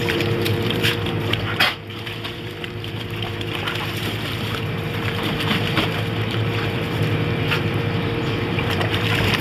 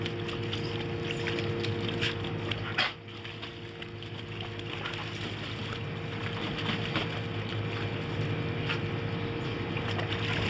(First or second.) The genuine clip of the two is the second